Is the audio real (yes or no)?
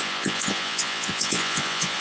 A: no